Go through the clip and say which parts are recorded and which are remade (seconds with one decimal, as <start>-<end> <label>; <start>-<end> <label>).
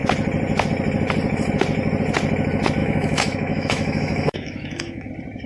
0.0-2.8 recorded; 2.8-5.1 remade; 5.1-5.5 recorded